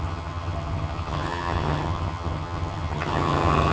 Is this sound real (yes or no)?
no